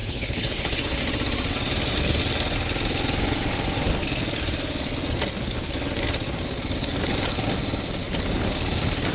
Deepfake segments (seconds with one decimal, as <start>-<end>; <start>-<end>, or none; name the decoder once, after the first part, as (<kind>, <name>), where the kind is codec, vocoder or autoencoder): 0.0-1.0 (codec, HILCodec)